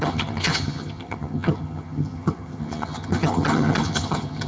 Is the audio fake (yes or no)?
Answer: yes